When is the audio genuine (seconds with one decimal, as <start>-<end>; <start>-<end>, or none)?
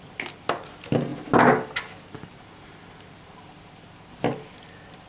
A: 0.0-5.1